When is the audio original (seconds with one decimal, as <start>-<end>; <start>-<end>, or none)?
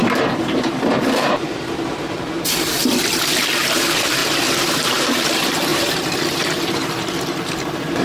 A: 2.8-3.6